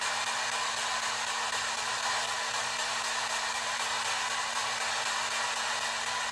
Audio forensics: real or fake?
real